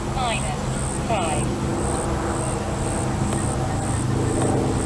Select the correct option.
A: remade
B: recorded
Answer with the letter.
B